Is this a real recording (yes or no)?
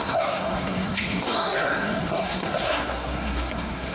no